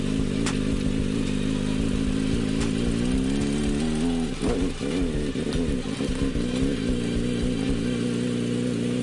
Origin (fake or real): real